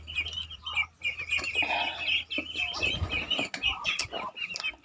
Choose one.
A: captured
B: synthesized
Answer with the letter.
A